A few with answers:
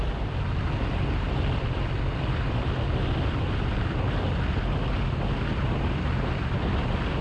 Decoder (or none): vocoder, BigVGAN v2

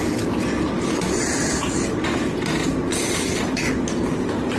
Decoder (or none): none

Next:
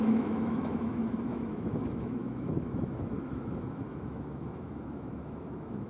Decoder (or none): autoencoder, DAC-VAE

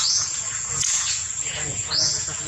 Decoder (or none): vocoder, Vocos